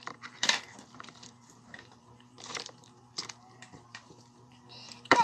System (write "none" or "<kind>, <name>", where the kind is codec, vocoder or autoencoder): vocoder, BigVGAN v2